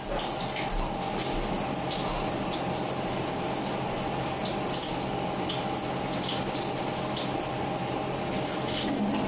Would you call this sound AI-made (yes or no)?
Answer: no